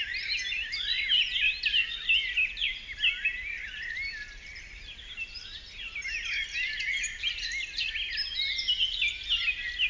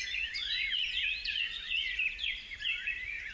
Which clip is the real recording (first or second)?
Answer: first